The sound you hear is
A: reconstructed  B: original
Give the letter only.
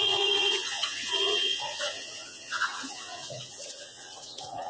A